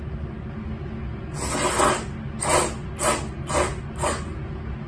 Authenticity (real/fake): real